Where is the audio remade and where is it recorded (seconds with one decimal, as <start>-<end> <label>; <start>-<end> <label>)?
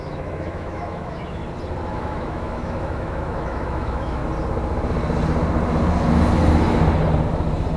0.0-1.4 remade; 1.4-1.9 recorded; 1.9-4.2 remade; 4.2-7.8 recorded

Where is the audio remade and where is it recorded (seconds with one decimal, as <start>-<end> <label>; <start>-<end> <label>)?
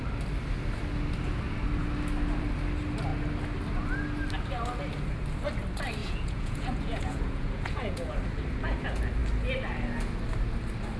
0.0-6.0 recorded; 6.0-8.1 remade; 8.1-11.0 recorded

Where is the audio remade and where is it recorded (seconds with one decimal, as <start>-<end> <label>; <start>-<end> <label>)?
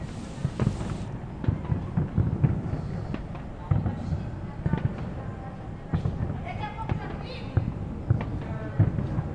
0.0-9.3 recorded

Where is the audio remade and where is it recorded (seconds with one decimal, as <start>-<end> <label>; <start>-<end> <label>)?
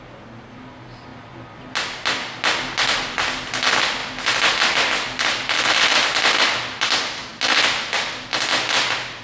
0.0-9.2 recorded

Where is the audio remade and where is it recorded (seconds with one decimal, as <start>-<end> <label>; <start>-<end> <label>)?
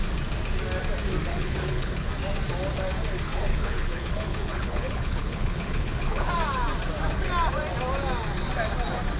0.0-1.3 recorded; 1.3-2.1 remade; 2.1-3.5 recorded; 3.5-6.3 remade; 6.3-9.2 recorded